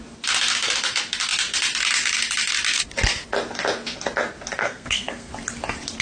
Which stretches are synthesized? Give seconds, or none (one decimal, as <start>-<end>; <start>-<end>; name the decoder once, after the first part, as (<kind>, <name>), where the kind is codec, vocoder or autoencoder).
4.6-5.3 (codec, SNAC)